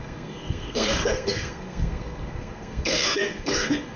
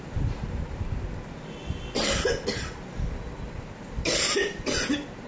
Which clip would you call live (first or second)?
second